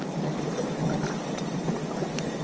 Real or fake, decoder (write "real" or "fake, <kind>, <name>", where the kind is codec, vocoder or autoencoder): real